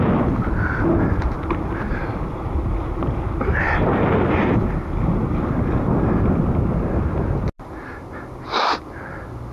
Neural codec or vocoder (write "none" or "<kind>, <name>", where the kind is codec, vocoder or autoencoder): none